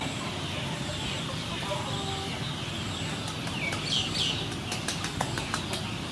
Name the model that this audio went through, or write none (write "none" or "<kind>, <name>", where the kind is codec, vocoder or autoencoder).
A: none